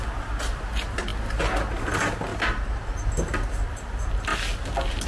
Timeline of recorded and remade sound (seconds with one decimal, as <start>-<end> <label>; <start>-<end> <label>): 0.0-5.1 recorded